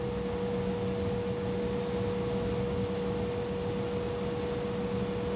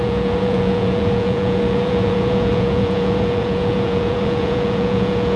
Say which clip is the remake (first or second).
second